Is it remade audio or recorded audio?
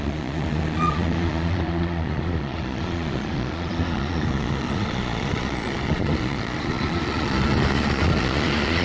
remade